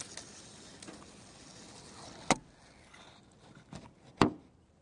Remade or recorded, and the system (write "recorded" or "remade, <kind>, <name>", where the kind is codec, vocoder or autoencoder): recorded